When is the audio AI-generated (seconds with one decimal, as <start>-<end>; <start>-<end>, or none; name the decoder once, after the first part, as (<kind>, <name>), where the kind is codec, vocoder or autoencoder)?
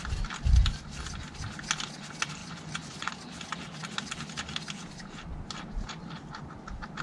2.4-3.1 (vocoder, Vocos)